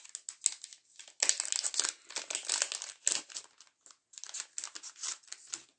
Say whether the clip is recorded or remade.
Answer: recorded